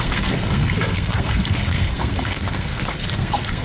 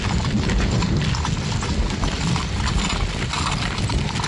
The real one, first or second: second